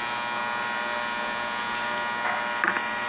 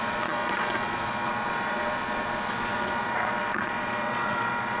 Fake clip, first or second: second